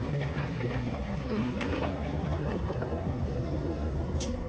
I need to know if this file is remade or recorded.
remade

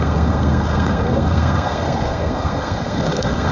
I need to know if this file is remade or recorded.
remade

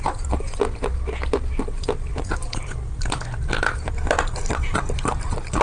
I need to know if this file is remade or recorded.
recorded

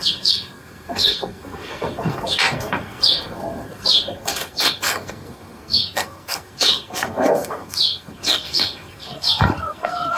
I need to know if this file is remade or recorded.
remade